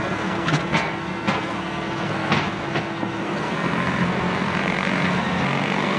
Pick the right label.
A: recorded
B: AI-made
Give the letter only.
B